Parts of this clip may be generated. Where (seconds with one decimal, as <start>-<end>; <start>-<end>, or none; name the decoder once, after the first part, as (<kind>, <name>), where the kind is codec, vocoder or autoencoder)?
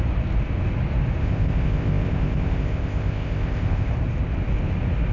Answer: 1.2-3.9 (codec, ZipCodec)